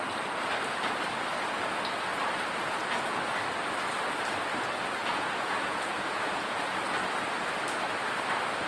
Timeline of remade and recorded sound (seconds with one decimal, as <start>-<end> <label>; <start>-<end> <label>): 0.0-5.0 recorded; 5.0-6.8 remade; 6.8-8.7 recorded